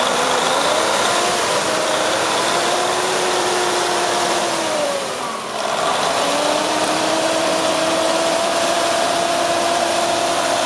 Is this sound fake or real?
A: fake